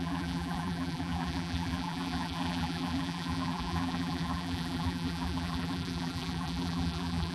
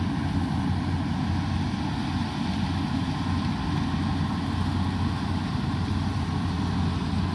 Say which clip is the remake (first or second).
first